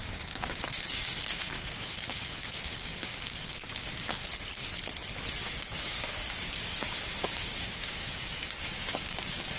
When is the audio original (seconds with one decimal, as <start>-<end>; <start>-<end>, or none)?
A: 4.2-5.4